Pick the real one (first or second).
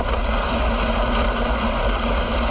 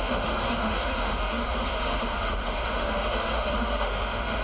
first